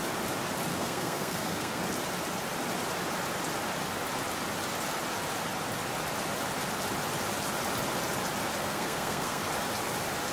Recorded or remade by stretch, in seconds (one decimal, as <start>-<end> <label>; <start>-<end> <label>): 0.0-0.7 recorded; 0.7-1.8 remade; 1.8-8.6 recorded; 8.6-9.4 remade; 9.4-10.3 recorded